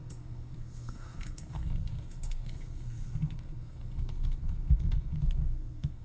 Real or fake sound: fake